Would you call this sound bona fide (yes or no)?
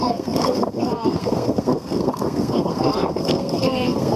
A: no